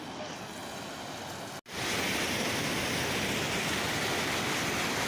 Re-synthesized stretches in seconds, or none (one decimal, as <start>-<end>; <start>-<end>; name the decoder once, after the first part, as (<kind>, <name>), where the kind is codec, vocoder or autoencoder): none